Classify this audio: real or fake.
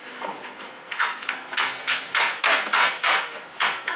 fake